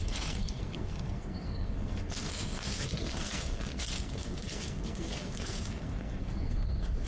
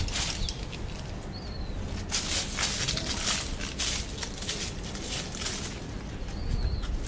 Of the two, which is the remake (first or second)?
first